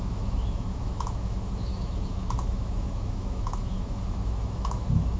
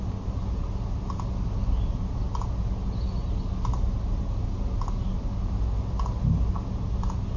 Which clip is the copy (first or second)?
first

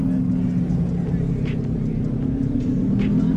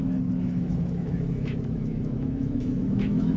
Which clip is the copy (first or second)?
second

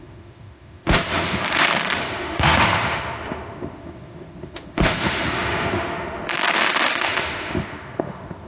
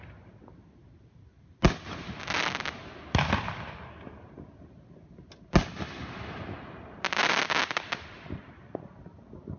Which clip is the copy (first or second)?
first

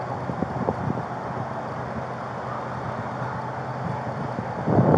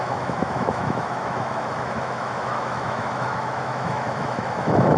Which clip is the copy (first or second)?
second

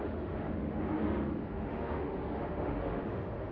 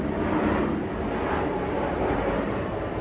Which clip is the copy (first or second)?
first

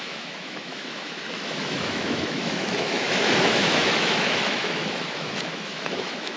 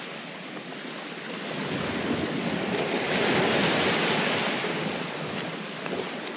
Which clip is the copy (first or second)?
first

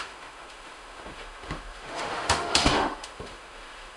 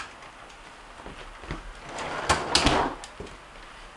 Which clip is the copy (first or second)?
first